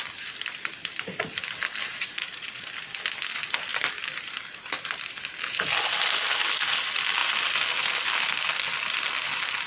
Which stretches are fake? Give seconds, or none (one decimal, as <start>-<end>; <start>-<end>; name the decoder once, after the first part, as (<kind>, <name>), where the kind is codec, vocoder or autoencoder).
1.9-2.6 (vocoder, Vocos)